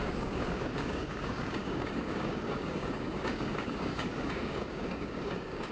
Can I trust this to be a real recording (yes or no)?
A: no